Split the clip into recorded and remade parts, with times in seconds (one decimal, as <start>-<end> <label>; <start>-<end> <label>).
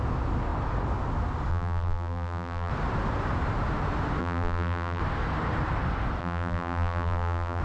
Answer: 0.0-1.5 recorded; 1.5-2.7 remade; 2.7-4.2 recorded; 4.2-5.0 remade; 5.0-6.2 recorded; 6.2-7.6 remade